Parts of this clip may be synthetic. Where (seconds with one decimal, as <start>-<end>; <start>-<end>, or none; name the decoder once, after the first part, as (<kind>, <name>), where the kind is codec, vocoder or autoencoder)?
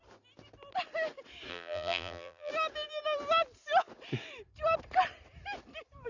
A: 1.5-2.5 (vocoder, BigVGAN v2)